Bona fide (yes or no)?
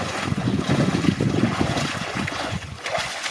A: no